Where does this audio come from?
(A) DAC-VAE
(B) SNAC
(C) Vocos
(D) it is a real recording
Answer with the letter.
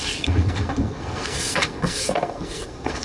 B